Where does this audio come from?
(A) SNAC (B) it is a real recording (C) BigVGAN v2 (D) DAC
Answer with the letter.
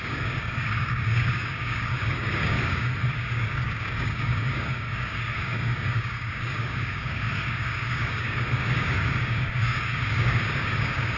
D